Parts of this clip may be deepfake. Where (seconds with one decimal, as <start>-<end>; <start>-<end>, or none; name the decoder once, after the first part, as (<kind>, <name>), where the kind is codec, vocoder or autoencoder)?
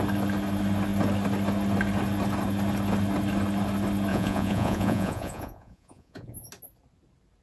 4.1-6.5 (vocoder, Vocos)